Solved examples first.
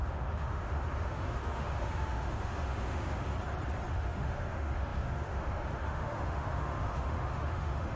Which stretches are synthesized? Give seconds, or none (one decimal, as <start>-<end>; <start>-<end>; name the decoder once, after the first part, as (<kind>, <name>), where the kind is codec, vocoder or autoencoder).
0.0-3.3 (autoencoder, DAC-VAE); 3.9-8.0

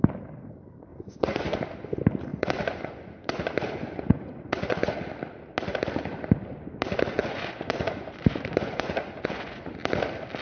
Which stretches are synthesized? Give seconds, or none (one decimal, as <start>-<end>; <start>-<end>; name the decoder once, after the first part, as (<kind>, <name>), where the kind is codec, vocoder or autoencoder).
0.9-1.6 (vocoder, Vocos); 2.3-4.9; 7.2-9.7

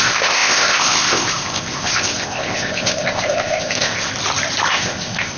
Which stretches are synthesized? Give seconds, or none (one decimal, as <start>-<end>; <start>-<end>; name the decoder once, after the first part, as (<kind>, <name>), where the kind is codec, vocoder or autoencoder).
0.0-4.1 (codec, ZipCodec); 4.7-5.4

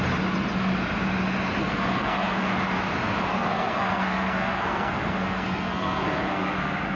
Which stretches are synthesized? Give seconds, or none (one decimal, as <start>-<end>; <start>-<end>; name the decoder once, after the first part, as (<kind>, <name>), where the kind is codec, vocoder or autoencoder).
1.6-2.5 (codec, SNAC); 3.3-7.0

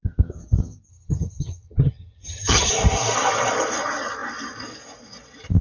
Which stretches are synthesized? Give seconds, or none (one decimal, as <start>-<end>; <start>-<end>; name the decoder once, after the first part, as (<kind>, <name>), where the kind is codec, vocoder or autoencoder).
0.9-2.7 (vocoder, HiFi-GAN)

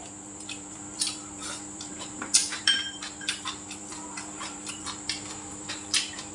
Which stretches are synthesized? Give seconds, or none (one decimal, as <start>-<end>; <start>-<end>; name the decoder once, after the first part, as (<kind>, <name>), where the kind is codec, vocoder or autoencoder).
0.0-6.3 (vocoder, BigVGAN v2)

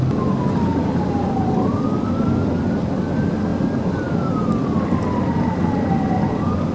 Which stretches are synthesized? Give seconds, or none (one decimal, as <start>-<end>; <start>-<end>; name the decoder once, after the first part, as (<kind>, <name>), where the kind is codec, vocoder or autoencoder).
none

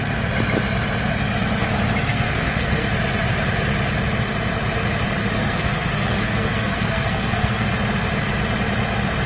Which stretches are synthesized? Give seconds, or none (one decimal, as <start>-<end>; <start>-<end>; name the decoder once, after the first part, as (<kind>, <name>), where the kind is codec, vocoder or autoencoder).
2.1-2.9 (codec, SNAC); 5.2-7.7